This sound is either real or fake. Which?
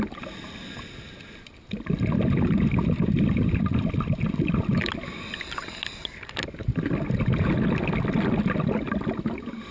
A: real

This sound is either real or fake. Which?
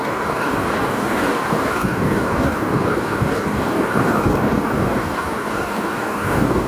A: fake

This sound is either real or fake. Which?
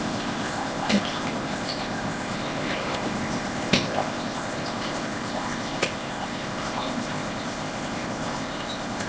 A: fake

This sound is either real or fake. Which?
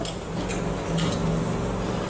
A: real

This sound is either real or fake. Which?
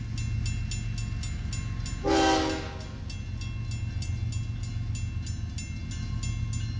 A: real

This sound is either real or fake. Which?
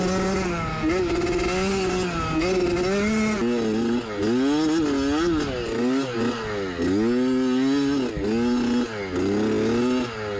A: real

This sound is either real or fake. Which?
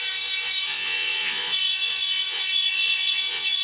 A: fake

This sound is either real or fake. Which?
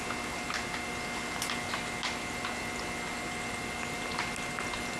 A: real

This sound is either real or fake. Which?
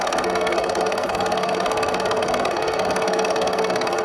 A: fake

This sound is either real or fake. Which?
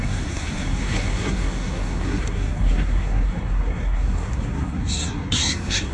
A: fake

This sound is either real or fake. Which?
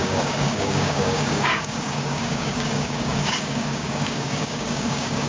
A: fake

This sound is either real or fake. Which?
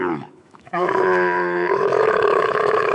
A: fake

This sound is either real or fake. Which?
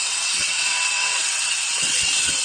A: fake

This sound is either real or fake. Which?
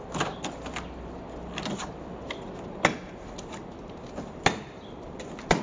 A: real